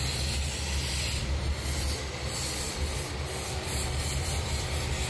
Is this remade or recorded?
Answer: recorded